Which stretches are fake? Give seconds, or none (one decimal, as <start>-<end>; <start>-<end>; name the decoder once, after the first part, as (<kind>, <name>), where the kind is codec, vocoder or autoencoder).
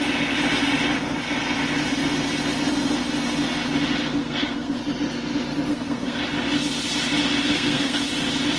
4.2-4.8 (codec, SNAC); 5.7-6.2; 7.5-8.0